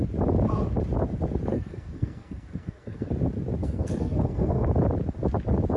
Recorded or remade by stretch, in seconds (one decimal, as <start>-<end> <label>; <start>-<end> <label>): 0.0-1.5 recorded; 1.5-3.1 remade; 3.1-3.6 recorded; 3.6-4.7 remade; 4.7-5.8 recorded